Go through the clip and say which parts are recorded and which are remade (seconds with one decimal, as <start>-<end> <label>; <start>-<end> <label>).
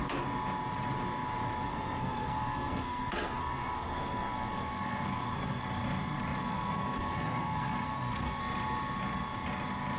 0.0-1.7 recorded; 1.7-5.6 remade; 5.6-6.4 recorded; 6.4-8.4 remade; 8.4-10.0 recorded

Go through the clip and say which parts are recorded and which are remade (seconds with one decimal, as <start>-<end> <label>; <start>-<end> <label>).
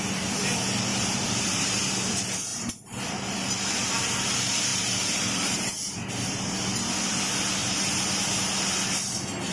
0.0-0.9 recorded; 0.9-1.6 remade; 1.6-2.5 recorded; 2.5-3.0 remade; 3.0-4.7 recorded; 4.7-6.1 remade; 6.1-9.5 recorded